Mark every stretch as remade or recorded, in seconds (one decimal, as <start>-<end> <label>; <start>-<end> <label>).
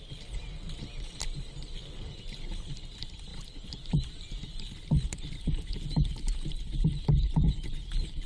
0.0-8.3 recorded